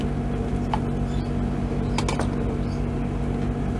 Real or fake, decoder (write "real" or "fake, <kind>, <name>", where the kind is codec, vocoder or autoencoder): real